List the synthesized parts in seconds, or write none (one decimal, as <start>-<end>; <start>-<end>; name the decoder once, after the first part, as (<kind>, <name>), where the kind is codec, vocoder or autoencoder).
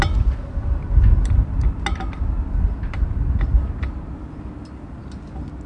none